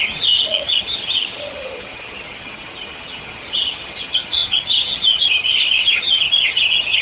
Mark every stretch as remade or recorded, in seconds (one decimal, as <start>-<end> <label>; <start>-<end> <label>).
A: 0.0-7.0 remade